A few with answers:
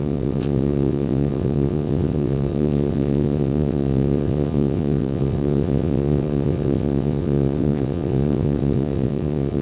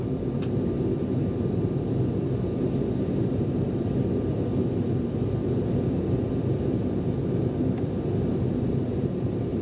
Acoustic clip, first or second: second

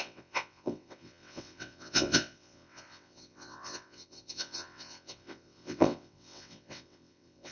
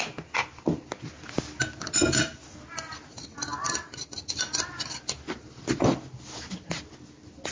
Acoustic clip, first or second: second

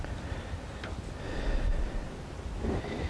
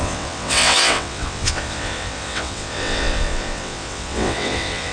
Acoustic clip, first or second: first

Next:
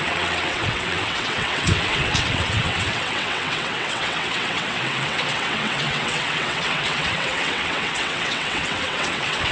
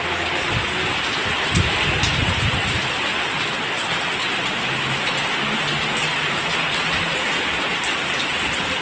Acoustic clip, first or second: second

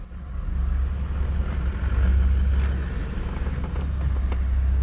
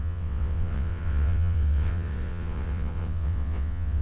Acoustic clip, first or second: first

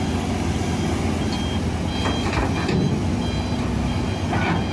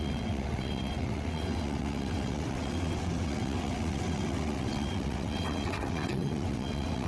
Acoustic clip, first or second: first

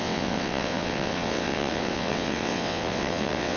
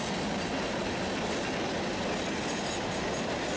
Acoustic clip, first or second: second